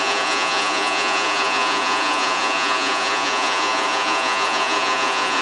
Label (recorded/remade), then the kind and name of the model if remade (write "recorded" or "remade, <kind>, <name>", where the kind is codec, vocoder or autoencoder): remade, vocoder, Vocos